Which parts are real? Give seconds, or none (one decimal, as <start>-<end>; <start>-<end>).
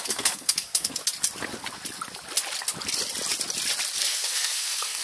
1.0-4.0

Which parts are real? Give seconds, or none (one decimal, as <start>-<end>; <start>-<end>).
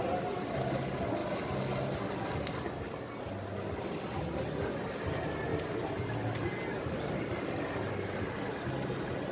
0.0-5.5; 6.5-9.3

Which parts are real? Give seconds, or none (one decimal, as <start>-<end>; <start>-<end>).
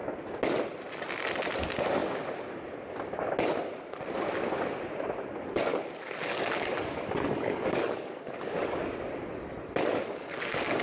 0.0-5.7; 8.8-9.9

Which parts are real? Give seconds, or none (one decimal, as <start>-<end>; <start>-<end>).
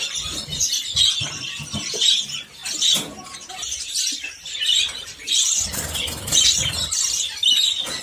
2.6-3.5